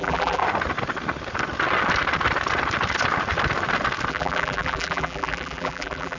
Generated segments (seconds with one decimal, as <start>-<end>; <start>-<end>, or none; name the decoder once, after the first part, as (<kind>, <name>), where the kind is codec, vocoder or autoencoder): 0.0-0.4 (vocoder, BigVGAN v2); 4.1-6.2

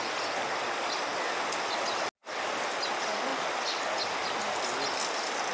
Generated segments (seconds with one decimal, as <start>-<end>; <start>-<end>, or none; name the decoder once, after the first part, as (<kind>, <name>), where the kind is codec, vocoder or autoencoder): none